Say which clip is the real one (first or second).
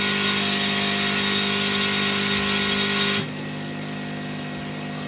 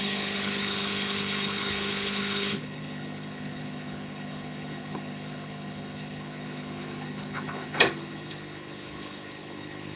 first